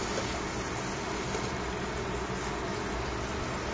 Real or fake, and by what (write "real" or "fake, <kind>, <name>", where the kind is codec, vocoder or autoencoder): real